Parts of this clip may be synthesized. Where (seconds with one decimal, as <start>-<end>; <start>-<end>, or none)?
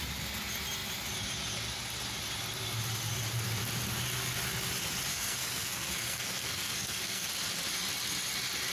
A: 5.1-7.3